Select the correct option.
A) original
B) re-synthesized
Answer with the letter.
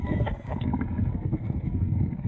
B